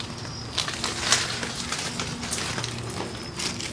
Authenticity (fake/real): real